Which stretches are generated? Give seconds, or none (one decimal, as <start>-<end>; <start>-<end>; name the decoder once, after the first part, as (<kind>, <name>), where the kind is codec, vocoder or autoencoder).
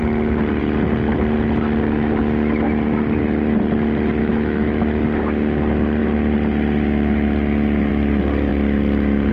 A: 4.2-4.8 (autoencoder, DAC-VAE)